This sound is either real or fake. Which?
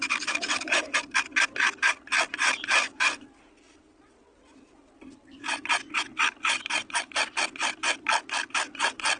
real